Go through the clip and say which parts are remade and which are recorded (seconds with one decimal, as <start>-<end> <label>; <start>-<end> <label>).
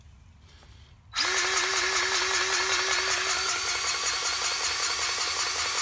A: 0.0-5.8 recorded